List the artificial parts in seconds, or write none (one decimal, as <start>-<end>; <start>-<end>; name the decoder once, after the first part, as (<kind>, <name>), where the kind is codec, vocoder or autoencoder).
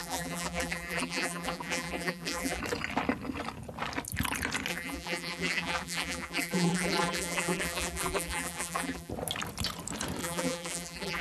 0.0-2.6 (vocoder, BigVGAN v2); 4.7-9.1; 10.2-11.2